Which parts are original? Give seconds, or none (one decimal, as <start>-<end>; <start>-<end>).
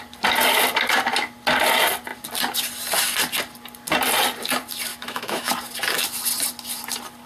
0.0-4.9; 5.5-7.3